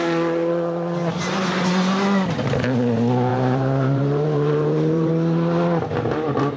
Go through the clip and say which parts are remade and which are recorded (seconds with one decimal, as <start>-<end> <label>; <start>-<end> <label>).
0.0-3.3 recorded; 3.3-5.1 remade; 5.1-6.6 recorded